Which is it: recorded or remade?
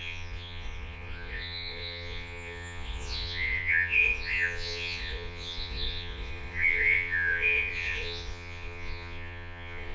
remade